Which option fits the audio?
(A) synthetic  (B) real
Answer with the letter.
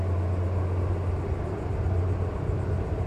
B